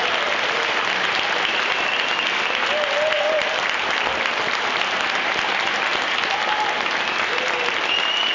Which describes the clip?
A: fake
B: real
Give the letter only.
B